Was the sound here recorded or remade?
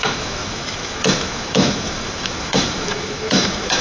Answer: remade